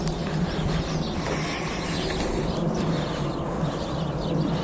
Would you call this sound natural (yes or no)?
yes